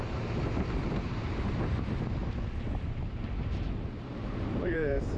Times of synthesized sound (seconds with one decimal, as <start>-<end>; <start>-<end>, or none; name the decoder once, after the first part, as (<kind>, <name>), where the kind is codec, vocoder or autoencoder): 0.0-2.2 (vocoder, BigVGAN v2); 3.1-5.2